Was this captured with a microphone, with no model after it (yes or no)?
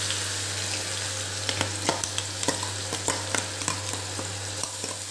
yes